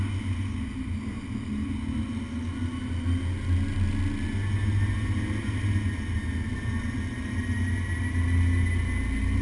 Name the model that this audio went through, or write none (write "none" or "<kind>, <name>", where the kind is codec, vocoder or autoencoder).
none